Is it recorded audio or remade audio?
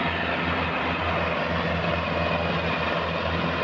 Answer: recorded